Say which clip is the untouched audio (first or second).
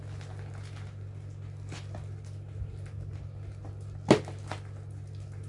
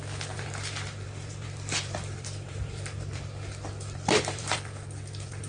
first